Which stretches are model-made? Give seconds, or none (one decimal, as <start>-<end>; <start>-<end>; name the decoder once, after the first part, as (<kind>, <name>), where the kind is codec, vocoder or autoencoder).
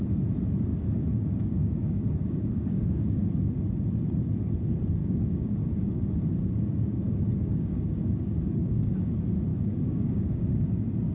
0.7-3.2 (codec, DAC); 5.0-9.1; 9.5-10.7